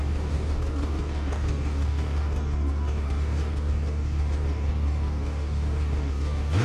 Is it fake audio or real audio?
fake